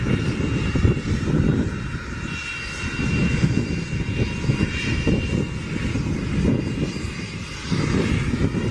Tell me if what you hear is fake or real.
real